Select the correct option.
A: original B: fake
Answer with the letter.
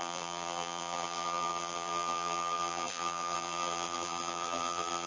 B